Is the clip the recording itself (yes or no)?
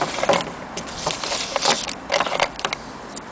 no